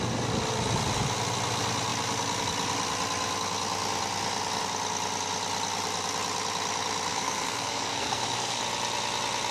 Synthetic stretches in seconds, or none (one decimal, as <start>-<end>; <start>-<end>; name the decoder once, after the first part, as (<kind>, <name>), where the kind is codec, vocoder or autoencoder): 7.1-8.6 (codec, SNAC)